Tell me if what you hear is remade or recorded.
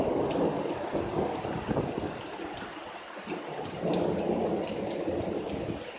recorded